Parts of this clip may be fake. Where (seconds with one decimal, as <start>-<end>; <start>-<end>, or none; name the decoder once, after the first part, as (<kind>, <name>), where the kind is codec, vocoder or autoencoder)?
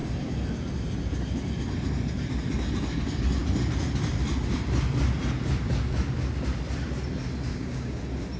7.5-8.0 (codec, DAC)